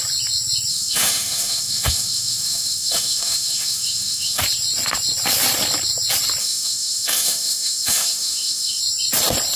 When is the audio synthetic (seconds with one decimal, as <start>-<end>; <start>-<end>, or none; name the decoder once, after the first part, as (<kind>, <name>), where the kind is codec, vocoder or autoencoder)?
0.7-4.4 (autoencoder, DAC-VAE); 6.4-8.8